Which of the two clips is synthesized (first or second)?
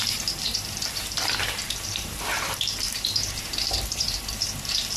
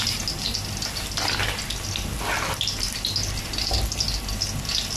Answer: first